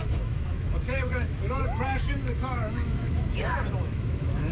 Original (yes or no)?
no